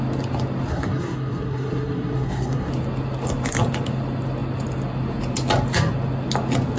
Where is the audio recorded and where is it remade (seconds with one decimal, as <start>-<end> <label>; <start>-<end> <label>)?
0.0-0.7 recorded; 0.7-2.7 remade; 2.7-6.8 recorded